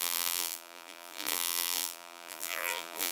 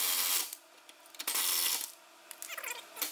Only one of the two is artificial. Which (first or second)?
first